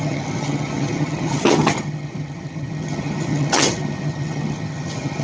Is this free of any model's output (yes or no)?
no